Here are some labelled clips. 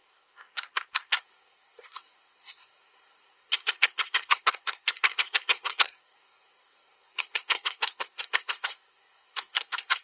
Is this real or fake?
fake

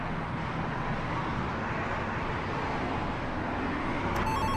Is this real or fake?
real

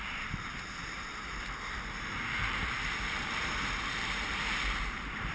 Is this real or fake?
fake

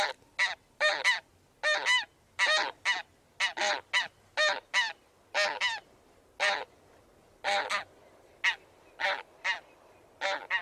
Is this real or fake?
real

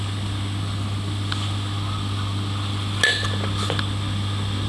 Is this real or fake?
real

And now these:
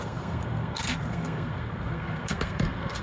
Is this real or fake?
fake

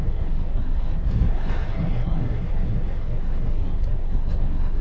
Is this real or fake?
fake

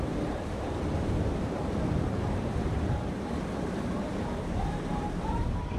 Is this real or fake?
fake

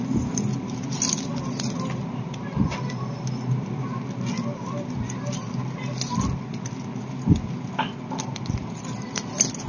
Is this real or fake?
real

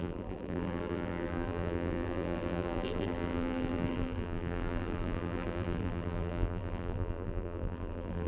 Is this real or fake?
fake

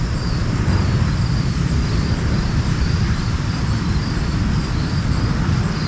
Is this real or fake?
real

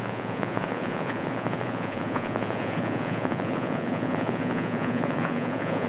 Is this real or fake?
fake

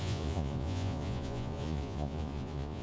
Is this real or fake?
fake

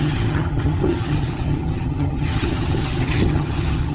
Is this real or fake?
fake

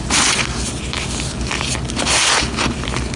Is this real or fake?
real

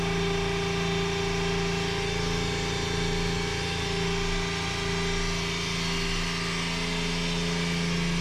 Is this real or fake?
real